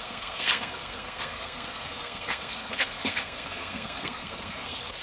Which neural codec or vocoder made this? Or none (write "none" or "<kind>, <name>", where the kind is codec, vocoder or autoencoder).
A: codec, SNAC